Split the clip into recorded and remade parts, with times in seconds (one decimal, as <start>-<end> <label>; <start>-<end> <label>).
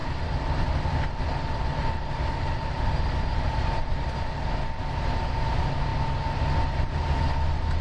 0.0-4.2 remade; 4.2-7.8 recorded